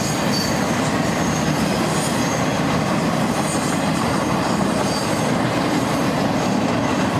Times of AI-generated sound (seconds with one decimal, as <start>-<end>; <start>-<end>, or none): 2.5-6.8